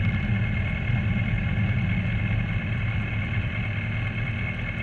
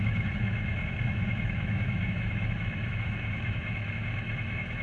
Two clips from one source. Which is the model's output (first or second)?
second